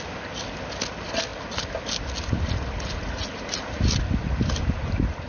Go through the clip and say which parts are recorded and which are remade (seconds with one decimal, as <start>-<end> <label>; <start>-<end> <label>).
0.0-5.3 recorded